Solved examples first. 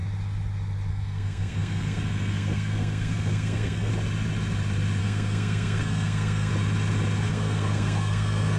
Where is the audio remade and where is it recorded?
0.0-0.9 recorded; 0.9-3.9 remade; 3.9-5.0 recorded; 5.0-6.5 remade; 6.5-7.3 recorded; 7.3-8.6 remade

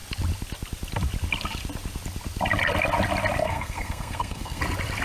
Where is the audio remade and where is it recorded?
0.0-3.4 recorded; 3.4-4.6 remade; 4.6-5.0 recorded